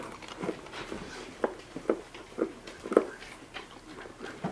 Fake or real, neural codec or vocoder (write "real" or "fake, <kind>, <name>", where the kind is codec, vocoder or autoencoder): real